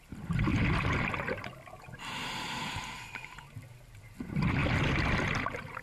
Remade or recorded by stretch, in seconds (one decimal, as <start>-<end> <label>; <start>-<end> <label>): 0.0-5.8 recorded